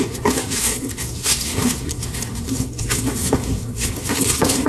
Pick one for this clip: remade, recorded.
remade